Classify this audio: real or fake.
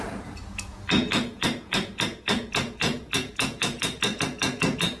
fake